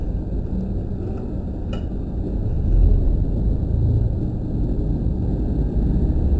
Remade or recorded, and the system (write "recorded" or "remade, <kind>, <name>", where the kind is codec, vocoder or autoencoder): recorded